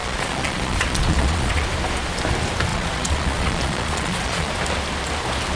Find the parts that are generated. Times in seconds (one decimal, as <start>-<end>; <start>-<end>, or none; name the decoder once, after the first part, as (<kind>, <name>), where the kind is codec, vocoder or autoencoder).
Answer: 0.0-1.7 (vocoder, Vocos); 2.7-4.5